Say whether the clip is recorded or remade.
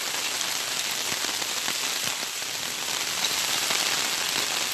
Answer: recorded